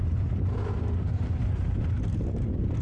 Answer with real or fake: real